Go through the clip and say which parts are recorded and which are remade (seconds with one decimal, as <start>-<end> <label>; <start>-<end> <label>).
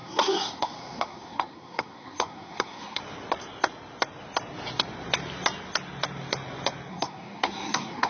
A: 0.0-3.0 remade; 3.0-6.9 recorded; 6.9-8.1 remade